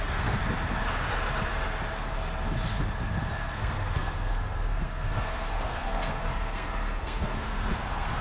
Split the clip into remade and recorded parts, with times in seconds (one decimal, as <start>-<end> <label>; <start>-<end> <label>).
0.0-0.4 remade; 0.4-3.3 recorded; 3.3-8.2 remade